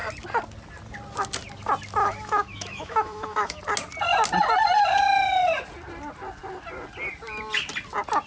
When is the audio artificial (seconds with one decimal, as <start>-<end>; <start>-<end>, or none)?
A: 2.0-3.6